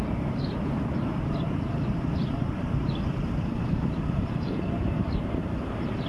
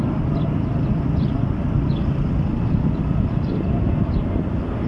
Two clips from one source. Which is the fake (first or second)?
first